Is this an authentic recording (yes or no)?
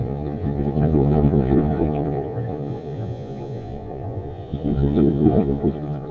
no